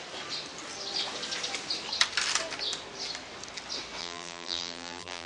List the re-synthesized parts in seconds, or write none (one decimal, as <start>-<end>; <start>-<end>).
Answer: 4.0-5.3